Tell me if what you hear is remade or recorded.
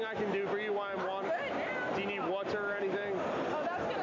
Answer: recorded